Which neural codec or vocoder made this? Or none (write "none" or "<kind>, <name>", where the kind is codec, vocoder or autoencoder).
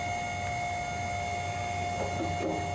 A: none